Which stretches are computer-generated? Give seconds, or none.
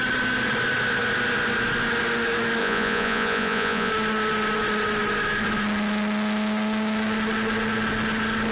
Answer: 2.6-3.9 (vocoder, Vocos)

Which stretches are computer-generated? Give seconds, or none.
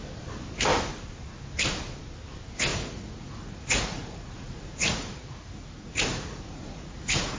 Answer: 2.7-7.4 (vocoder, Vocos)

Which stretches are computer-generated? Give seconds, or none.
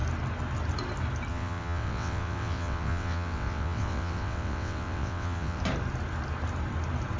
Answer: 1.3-5.6 (vocoder, WaveNeXt)